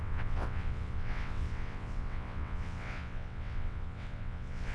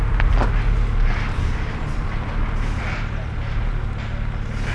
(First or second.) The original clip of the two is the second